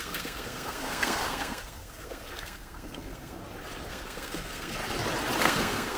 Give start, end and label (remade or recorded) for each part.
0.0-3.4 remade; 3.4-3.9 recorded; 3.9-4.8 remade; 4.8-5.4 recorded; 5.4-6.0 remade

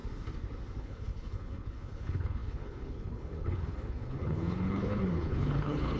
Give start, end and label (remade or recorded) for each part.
0.0-0.8 recorded; 0.8-6.0 remade

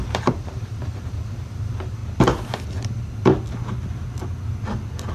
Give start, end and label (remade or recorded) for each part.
0.0-2.0 remade; 2.0-5.1 recorded